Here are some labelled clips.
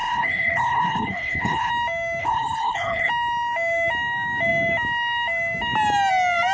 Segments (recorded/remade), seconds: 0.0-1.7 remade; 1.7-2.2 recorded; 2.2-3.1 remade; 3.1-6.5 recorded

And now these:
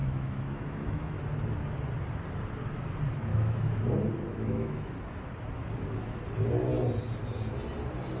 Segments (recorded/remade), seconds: 0.0-1.2 remade; 1.2-3.3 recorded; 3.3-3.8 remade; 3.8-4.3 recorded; 4.3-4.9 remade; 4.9-8.2 recorded